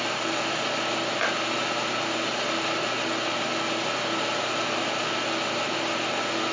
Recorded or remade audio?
recorded